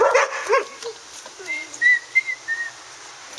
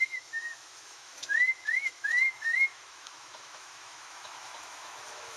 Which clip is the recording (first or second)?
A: first